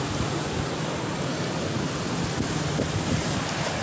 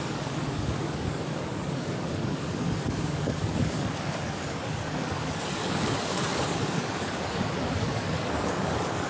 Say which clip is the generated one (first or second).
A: second